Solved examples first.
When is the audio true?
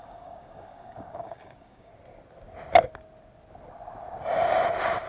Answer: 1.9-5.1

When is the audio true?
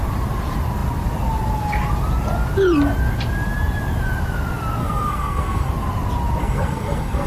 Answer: 0.0-4.8; 5.7-6.4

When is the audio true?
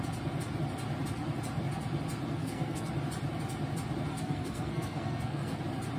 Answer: 0.0-2.3; 2.9-4.1; 5.6-6.0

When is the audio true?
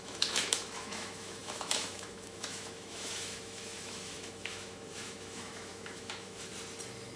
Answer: 6.5-7.2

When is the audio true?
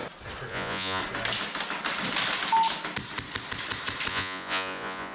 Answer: 0.0-0.5; 1.0-4.1